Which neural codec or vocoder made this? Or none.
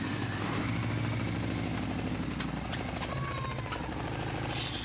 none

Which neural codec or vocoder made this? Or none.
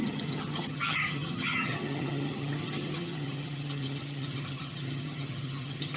vocoder, HiFi-GAN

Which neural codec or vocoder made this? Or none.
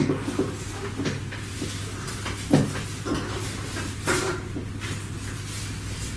none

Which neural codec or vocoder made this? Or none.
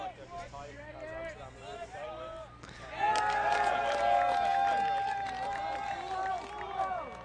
none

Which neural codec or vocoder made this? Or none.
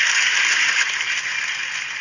none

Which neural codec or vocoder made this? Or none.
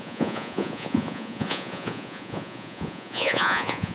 vocoder, Vocos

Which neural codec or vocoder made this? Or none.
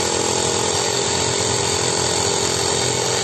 none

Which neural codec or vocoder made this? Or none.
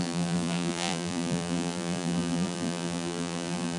vocoder, BigVGAN v2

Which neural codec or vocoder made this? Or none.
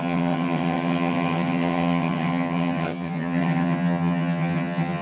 vocoder, HiFi-GAN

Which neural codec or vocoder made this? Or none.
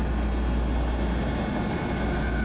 none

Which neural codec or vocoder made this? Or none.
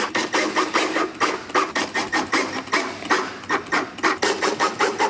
none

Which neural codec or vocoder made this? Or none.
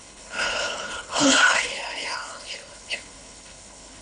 codec, HILCodec